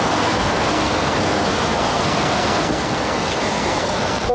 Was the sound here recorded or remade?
remade